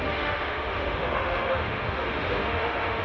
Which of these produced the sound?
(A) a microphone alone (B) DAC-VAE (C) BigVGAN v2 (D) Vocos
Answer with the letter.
B